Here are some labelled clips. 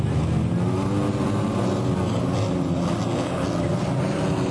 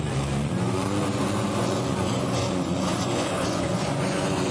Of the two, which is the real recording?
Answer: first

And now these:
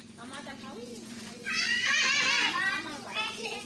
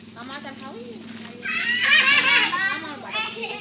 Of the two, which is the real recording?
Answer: second